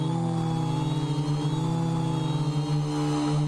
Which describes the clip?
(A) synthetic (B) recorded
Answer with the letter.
B